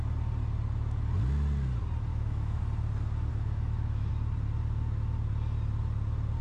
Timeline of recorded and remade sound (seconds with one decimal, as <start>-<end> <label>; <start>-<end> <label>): 0.0-2.1 recorded; 2.1-2.6 remade; 2.6-3.3 recorded; 3.3-4.1 remade; 4.1-6.4 recorded